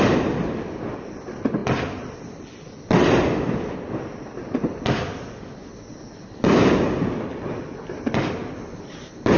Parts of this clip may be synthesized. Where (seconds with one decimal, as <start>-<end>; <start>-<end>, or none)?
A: none